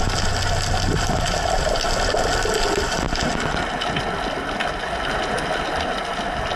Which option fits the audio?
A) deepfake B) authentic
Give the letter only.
B